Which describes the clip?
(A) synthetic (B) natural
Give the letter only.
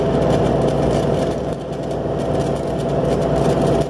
B